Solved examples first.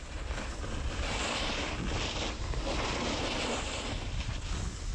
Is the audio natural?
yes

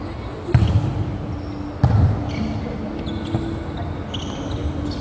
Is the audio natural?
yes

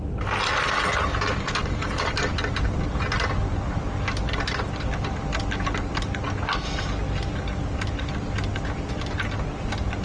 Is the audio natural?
yes